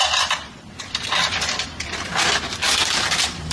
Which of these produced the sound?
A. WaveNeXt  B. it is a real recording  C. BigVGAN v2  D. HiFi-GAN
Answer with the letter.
B